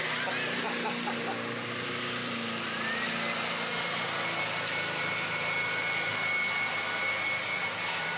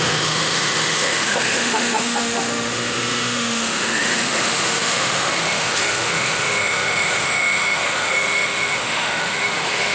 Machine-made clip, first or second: second